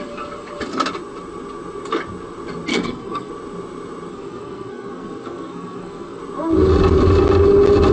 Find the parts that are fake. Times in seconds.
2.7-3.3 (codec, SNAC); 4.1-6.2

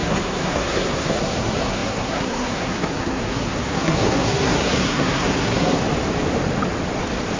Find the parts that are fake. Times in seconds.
0.0-5.8 (codec, SNAC)